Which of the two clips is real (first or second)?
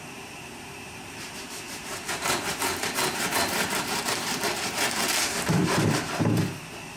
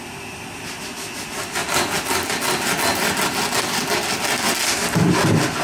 second